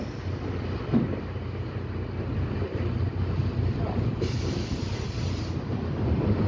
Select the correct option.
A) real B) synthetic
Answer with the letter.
A